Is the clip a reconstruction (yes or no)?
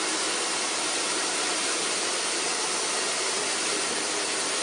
no